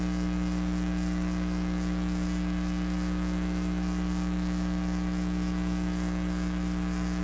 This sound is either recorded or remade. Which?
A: remade